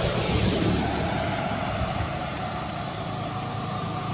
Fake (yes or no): no